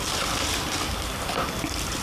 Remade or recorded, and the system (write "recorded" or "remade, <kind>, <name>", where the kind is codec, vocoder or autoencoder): recorded